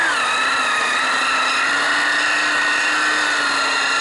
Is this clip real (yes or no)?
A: yes